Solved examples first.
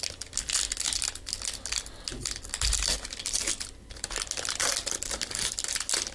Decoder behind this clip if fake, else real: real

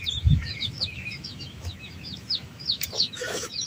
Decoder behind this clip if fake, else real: fake, autoencoder, DAC-VAE